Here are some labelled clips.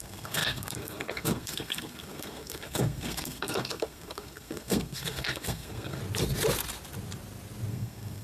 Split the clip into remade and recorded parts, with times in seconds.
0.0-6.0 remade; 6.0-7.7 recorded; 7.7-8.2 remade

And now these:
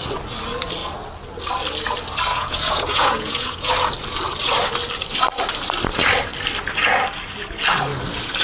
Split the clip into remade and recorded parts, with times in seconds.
0.0-2.3 recorded; 2.3-3.7 remade; 3.7-8.4 recorded

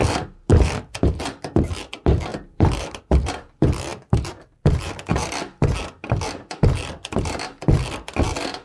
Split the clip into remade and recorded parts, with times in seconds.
0.0-0.5 recorded; 0.5-1.7 remade; 1.7-2.3 recorded; 2.3-3.0 remade; 3.0-3.9 recorded; 3.9-4.9 remade; 4.9-8.6 recorded

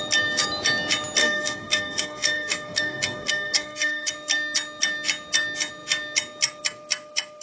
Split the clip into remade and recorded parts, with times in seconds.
0.0-1.2 recorded; 1.2-4.1 remade; 4.1-7.4 recorded

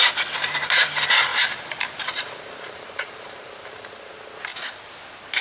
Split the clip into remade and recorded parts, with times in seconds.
0.0-1.3 recorded; 1.3-4.1 remade; 4.1-4.5 recorded; 4.5-5.0 remade; 5.0-5.4 recorded

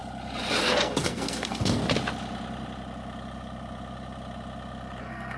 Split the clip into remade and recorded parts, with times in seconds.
0.0-0.6 recorded; 0.6-1.8 remade; 1.8-5.0 recorded; 5.0-5.4 remade